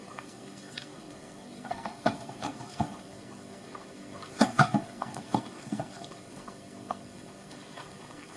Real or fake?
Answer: fake